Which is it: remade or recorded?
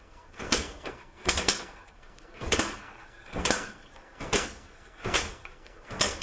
remade